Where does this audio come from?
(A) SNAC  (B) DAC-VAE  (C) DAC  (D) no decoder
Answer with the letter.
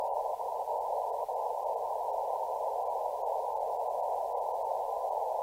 D